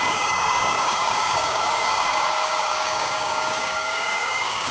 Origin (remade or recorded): remade